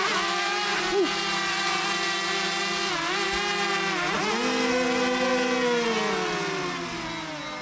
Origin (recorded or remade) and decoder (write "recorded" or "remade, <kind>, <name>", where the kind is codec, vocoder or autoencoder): recorded